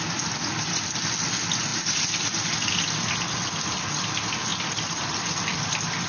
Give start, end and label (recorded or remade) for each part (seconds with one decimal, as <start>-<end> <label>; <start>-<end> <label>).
0.0-6.1 recorded